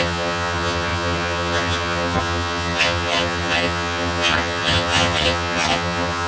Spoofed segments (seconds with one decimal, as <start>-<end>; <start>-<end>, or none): 0.0-6.3